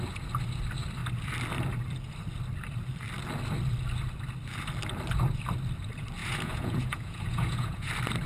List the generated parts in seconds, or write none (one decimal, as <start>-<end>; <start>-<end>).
6.2-7.9